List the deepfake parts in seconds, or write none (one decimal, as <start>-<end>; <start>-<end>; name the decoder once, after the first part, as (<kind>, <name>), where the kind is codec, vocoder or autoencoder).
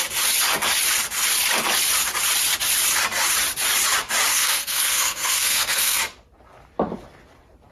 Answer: 4.3-6.0 (codec, SNAC)